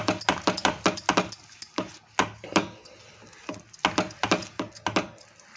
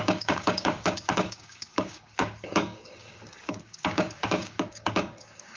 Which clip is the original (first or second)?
first